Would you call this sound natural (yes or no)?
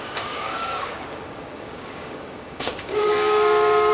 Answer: no